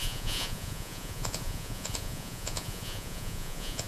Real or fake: fake